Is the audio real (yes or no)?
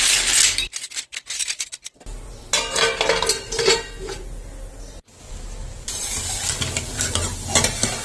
yes